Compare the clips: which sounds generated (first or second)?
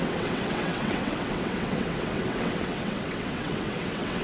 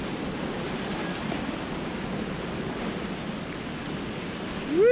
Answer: first